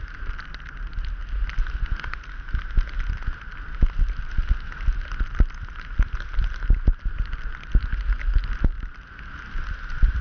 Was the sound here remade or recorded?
recorded